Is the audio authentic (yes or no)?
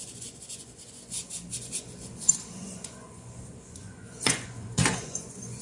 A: no